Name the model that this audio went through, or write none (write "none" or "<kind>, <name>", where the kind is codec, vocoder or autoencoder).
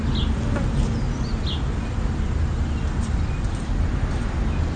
none